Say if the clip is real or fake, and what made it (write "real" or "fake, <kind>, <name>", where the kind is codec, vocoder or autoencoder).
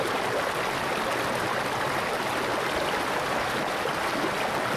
real